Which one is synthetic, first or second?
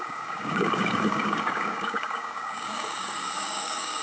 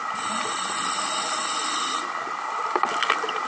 first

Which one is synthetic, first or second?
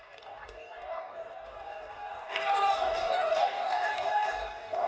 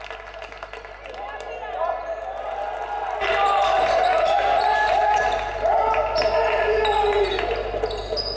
first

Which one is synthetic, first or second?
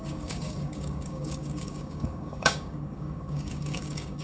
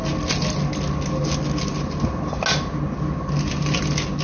first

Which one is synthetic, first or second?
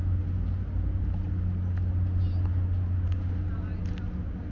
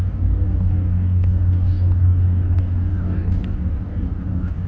second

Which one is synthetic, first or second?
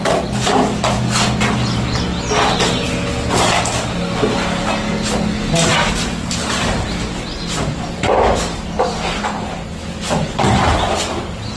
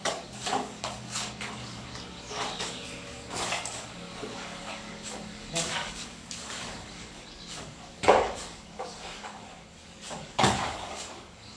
second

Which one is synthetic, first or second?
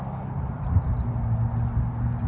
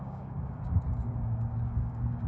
second